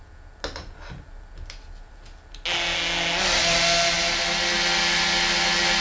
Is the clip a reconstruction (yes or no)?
no